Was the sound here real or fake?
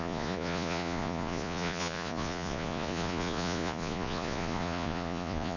fake